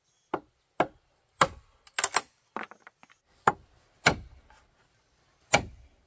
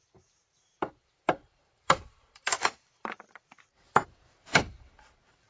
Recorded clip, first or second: first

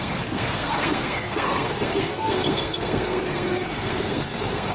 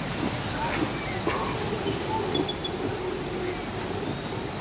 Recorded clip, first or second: second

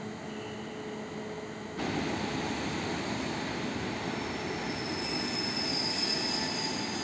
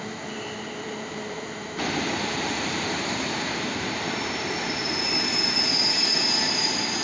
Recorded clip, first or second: first